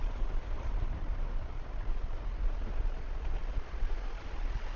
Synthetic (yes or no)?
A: yes